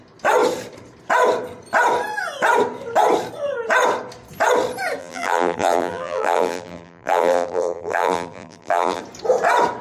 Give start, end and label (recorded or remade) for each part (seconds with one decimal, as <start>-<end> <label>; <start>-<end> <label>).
0.0-5.0 recorded; 5.0-9.0 remade; 9.0-9.8 recorded